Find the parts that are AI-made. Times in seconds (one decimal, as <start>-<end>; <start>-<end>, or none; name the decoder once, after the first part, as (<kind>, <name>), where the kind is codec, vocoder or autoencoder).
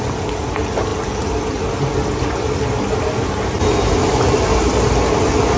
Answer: none